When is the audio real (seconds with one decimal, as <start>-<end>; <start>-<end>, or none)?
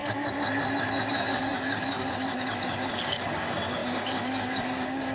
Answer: 0.0-1.1